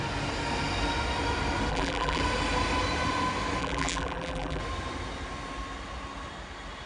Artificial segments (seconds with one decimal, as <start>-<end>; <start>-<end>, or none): 1.7-2.2; 3.6-4.6